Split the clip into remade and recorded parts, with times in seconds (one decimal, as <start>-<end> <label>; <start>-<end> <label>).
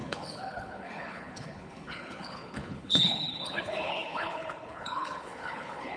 0.0-6.0 remade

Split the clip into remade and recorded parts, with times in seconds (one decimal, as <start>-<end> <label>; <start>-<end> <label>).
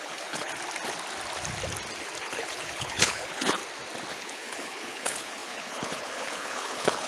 0.0-0.5 remade; 0.5-2.2 recorded; 2.2-3.6 remade; 3.6-4.1 recorded; 4.1-7.1 remade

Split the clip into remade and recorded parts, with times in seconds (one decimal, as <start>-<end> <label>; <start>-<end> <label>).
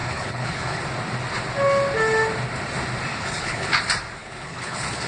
0.0-0.8 remade; 0.8-3.1 recorded; 3.1-3.8 remade; 3.8-4.2 recorded; 4.2-5.1 remade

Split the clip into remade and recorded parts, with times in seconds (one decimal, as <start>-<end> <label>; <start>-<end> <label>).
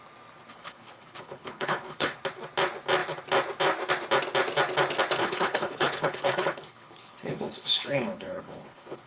0.0-0.5 recorded; 0.5-2.2 remade; 2.2-5.2 recorded; 5.2-9.1 remade